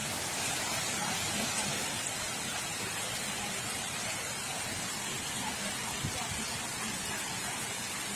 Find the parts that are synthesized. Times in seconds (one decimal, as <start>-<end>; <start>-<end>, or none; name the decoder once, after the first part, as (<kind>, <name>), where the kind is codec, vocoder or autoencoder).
0.0-1.8 (vocoder, BigVGAN v2)